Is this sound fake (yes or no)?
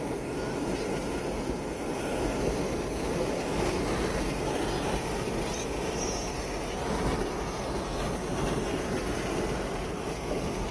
no